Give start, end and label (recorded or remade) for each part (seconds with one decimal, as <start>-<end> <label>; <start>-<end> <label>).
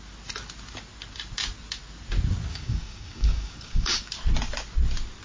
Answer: 0.0-2.5 recorded; 2.5-4.1 remade; 4.1-5.2 recorded